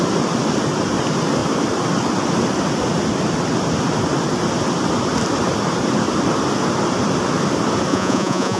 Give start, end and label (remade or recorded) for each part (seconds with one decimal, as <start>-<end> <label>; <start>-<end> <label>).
0.0-7.9 recorded; 7.9-8.6 remade